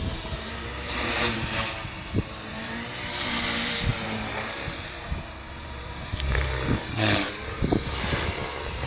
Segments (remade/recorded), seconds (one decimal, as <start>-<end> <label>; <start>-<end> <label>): 0.0-8.9 remade